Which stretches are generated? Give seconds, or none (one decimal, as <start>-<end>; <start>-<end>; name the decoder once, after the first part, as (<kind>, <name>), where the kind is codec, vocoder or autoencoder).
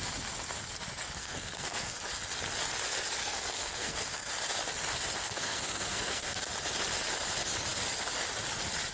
1.2-2.0 (codec, SNAC); 3.2-4.3; 5.2-6.5